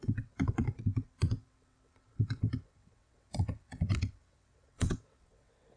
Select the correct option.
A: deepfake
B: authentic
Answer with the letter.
A